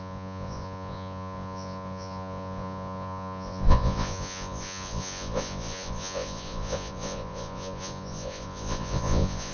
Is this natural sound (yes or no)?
no